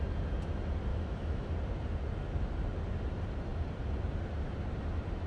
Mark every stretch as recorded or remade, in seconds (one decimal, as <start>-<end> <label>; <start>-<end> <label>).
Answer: 0.0-0.9 recorded; 0.9-1.5 remade; 1.5-5.3 recorded